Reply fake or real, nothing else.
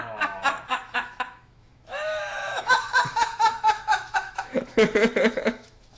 fake